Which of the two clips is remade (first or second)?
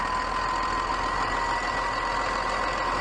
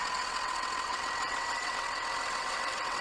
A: second